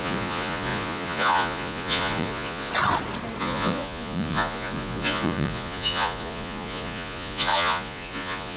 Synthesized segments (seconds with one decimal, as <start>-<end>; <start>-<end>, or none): 0.0-2.7; 3.4-8.6